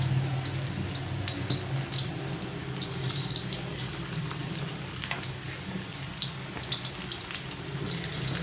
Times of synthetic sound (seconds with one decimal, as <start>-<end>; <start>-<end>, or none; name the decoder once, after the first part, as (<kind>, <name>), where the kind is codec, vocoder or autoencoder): 2.6-6.5 (codec, DAC)